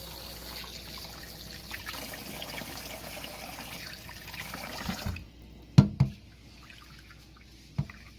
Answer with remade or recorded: recorded